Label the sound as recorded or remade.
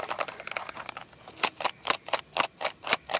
recorded